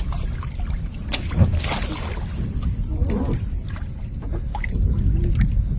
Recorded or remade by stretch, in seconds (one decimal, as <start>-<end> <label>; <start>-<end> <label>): 0.0-5.8 recorded